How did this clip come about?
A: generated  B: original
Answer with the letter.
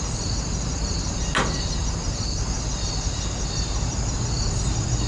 B